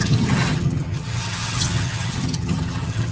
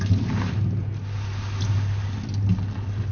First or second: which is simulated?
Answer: first